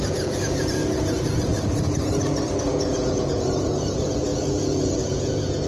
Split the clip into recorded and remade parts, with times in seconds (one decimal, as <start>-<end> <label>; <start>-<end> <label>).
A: 0.0-1.5 remade; 1.5-2.6 recorded; 2.6-5.7 remade